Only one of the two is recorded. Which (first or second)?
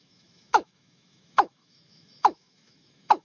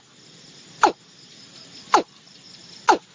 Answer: second